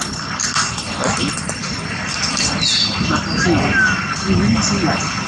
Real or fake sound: real